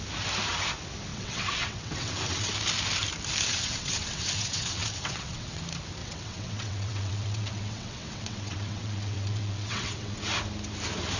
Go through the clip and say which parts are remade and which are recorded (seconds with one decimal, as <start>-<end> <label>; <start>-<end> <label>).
0.0-1.1 recorded; 1.1-2.5 remade; 2.5-3.5 recorded; 3.5-5.6 remade; 5.6-6.0 recorded; 6.0-10.2 remade; 10.2-11.2 recorded